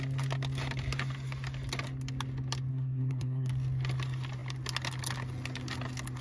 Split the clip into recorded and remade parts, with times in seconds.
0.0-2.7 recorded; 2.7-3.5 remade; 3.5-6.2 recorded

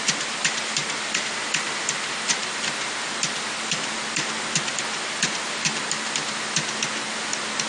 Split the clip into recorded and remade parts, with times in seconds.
0.0-7.7 recorded

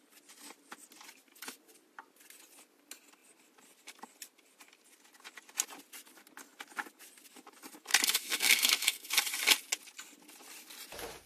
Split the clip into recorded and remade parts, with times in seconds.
0.0-7.9 recorded; 7.9-9.1 remade; 9.1-11.3 recorded

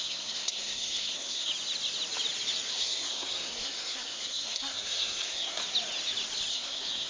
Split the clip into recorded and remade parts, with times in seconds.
0.0-1.5 remade; 1.5-2.7 recorded; 2.7-5.6 remade; 5.6-6.5 recorded; 6.5-7.1 remade

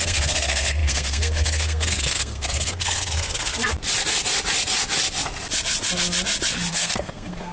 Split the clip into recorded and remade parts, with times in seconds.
0.0-3.5 remade; 3.5-6.7 recorded; 6.7-7.5 remade

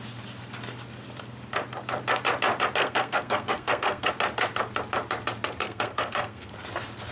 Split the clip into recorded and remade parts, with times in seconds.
0.0-2.8 recorded; 2.8-4.1 remade; 4.1-5.6 recorded; 5.6-6.5 remade; 6.5-7.1 recorded

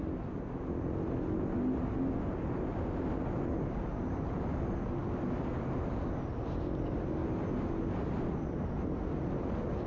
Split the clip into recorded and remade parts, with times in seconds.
0.0-9.9 recorded